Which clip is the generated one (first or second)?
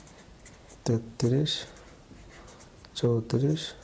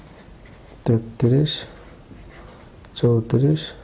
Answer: first